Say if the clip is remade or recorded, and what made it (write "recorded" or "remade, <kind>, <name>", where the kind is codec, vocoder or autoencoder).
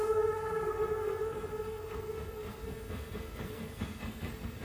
remade, codec, SNAC